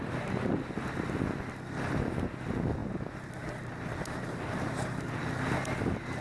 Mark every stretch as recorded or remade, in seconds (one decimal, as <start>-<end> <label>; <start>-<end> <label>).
0.0-6.2 recorded